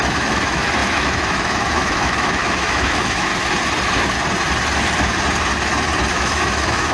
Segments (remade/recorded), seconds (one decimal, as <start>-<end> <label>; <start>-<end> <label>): 0.0-3.3 remade; 3.3-6.1 recorded; 6.1-6.9 remade